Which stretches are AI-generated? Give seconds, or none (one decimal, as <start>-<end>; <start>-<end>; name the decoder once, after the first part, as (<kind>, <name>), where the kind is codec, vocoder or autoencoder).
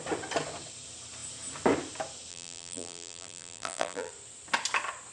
2.3-4.1 (vocoder, BigVGAN v2)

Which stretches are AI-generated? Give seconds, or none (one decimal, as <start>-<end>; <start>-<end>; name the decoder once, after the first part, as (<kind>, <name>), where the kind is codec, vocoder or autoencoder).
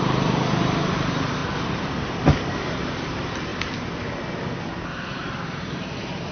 0.0-1.4 (vocoder, BigVGAN v2); 2.6-3.5; 5.1-6.3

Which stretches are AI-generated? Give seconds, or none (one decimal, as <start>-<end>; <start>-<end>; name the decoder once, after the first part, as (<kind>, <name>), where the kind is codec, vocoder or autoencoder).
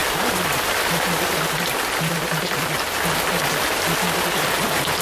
0.0-2.4 (vocoder, BigVGAN v2)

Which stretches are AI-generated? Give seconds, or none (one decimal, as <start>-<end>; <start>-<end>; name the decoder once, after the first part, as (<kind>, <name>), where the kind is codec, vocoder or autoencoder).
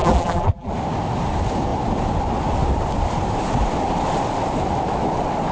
0.0-0.7 (vocoder, BigVGAN v2)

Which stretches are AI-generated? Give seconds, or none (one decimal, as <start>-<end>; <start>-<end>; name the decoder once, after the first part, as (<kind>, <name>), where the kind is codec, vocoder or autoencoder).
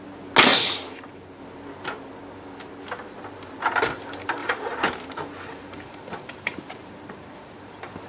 0.5-1.4 (vocoder, BigVGAN v2); 4.4-8.1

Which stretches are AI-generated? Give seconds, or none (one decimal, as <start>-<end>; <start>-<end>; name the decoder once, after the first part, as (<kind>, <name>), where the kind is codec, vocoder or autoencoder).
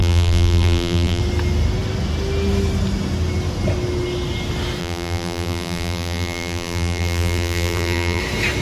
0.0-1.2 (vocoder, BigVGAN v2); 4.8-8.2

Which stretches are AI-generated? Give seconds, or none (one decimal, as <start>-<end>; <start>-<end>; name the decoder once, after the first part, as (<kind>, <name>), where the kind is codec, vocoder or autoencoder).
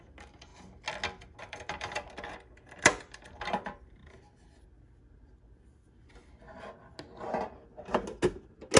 0.0-0.5 (vocoder, BigVGAN v2); 1.4-4.0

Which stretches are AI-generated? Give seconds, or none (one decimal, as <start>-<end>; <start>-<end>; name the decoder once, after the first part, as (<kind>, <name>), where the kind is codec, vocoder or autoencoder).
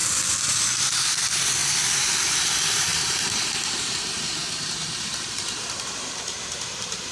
0.0-1.1 (vocoder, BigVGAN v2); 1.6-2.2; 2.9-3.9; 4.4-7.1